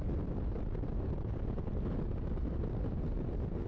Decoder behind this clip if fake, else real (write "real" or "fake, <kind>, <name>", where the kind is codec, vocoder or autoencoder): real